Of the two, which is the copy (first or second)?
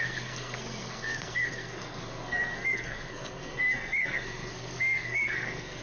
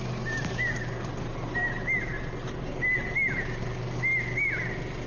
first